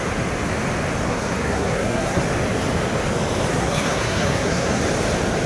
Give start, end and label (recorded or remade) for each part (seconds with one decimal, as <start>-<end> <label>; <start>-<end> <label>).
0.0-1.1 recorded; 1.1-2.2 remade; 2.2-3.5 recorded; 3.5-4.8 remade; 4.8-5.5 recorded